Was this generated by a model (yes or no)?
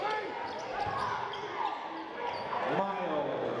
no